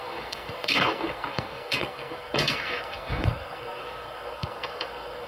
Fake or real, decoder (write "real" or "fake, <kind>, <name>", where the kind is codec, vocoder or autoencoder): fake, codec, SNAC